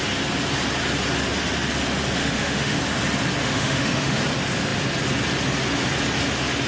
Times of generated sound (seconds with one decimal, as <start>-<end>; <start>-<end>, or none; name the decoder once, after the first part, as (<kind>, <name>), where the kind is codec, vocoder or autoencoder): 2.2-2.8 (autoencoder, DAC-VAE); 3.4-4.2